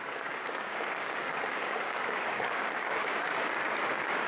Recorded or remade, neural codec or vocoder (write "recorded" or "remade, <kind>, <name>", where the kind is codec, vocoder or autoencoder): remade, codec, DAC